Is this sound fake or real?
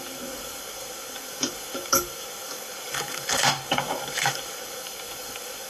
fake